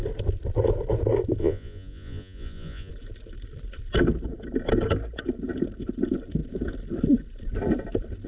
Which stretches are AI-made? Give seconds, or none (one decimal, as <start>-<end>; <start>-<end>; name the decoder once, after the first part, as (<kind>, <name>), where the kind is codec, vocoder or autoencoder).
1.4-2.9 (vocoder, Vocos)